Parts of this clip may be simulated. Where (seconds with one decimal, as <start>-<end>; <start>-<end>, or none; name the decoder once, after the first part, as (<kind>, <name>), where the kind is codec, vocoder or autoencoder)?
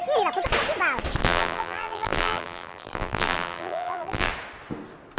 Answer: 1.2-4.3 (vocoder, BigVGAN v2)